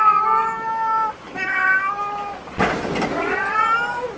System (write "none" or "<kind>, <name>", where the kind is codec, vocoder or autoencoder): none